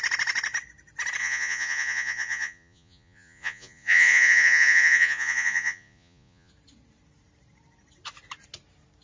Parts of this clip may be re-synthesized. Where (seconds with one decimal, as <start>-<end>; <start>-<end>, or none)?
1.2-6.5